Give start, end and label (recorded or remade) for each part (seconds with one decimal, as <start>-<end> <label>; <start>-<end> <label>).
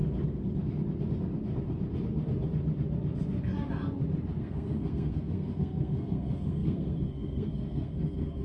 0.0-4.4 recorded; 4.4-8.4 remade